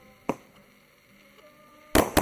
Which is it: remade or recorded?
recorded